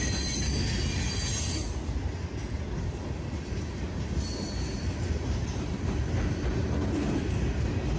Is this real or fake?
real